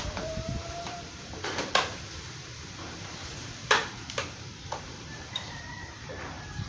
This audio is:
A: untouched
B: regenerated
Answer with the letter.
B